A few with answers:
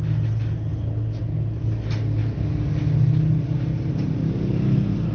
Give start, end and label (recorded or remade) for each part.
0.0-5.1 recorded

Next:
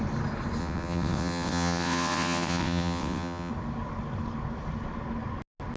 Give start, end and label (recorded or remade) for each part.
0.0-0.6 recorded; 0.6-3.5 remade; 3.5-5.8 recorded

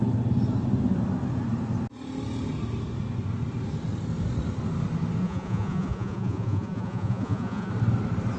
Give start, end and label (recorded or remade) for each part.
0.0-5.2 recorded; 5.2-7.7 remade; 7.7-8.4 recorded

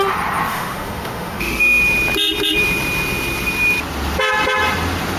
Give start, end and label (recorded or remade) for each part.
0.0-0.5 recorded; 0.5-1.8 remade; 1.8-5.2 recorded

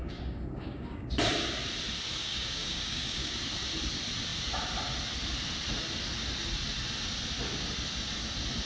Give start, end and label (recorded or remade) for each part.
0.0-1.1 remade; 1.1-2.2 recorded; 2.2-3.3 remade; 3.3-8.7 recorded

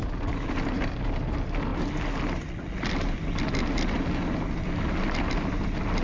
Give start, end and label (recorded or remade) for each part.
0.0-6.0 recorded

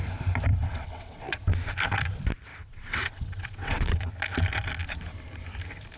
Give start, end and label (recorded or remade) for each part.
0.0-0.5 recorded; 0.5-1.4 remade; 1.4-2.5 recorded; 2.5-4.1 remade; 4.1-6.0 recorded